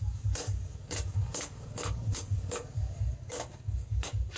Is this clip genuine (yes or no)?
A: no